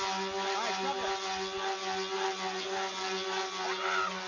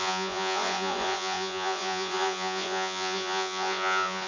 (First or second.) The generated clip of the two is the second